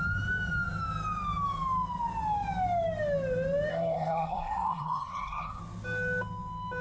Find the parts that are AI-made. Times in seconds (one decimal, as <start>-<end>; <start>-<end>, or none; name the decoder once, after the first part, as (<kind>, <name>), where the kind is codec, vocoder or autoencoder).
3.7-5.6 (codec, SNAC)